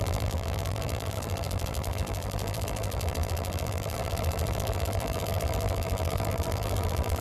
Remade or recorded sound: remade